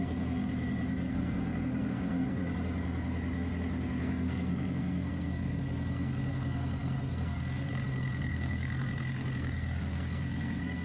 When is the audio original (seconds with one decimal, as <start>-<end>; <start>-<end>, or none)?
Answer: 0.4-1.1; 2.4-4.0